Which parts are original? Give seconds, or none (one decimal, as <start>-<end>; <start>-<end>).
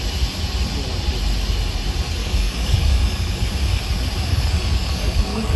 0.0-2.2; 3.8-4.3